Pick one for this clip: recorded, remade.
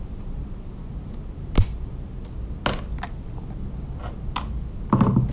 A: recorded